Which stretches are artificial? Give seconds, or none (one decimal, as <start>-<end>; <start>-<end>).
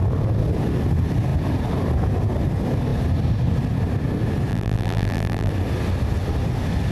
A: 4.5-5.5